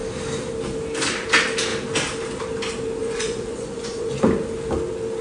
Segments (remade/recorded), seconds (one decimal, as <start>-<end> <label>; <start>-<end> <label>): 0.0-3.0 recorded; 3.0-4.2 remade; 4.2-5.2 recorded